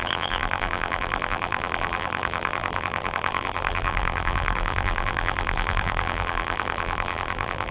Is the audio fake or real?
fake